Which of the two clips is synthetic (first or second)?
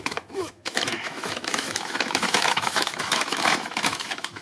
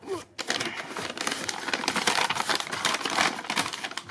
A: first